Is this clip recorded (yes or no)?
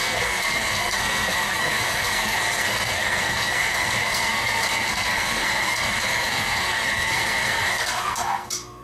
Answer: no